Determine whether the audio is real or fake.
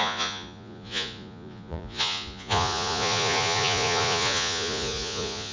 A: fake